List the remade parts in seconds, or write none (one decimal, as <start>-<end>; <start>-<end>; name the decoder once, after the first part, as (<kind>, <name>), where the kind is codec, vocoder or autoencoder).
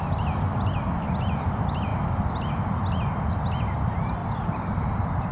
4.2-5.3 (vocoder, BigVGAN v2)